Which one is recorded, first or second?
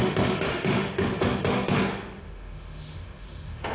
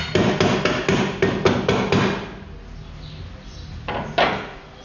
second